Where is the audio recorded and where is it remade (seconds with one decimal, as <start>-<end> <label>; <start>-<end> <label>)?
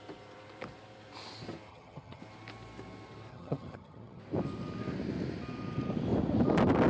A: 0.0-1.7 recorded; 1.7-2.2 remade; 2.2-3.3 recorded; 3.3-4.2 remade; 4.2-6.9 recorded